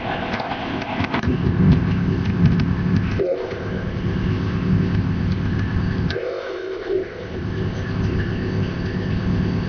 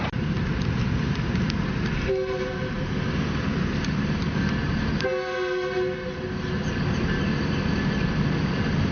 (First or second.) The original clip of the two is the second